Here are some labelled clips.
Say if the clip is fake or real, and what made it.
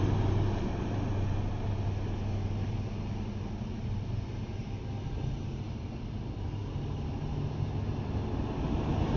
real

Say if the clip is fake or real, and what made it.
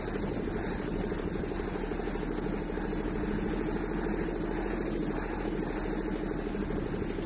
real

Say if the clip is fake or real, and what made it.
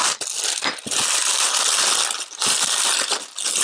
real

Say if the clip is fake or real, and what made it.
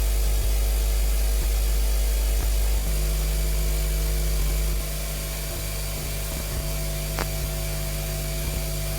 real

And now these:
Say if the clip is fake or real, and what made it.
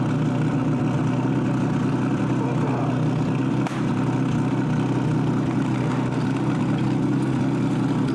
real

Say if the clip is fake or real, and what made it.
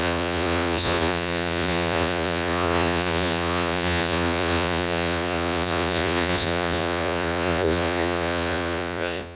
fake, vocoder, Vocos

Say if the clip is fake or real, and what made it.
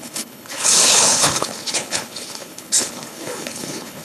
fake, codec, HILCodec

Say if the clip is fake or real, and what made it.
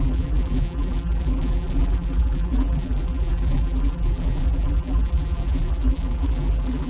fake, vocoder, BigVGAN v2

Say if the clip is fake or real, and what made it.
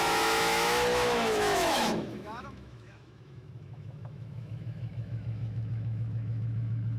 fake, autoencoder, DAC-VAE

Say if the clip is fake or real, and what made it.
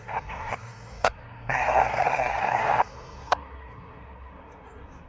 fake, codec, SNAC